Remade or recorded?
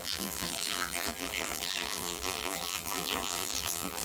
remade